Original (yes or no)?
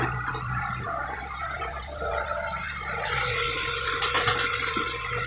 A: yes